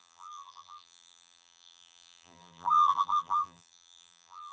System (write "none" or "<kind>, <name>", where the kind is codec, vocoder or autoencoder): vocoder, BigVGAN v2